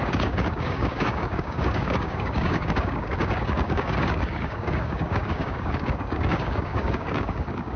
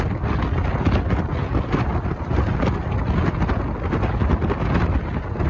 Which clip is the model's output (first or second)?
first